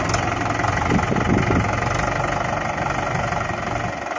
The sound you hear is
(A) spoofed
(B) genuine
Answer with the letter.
B